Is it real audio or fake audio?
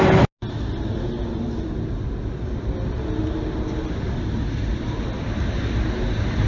real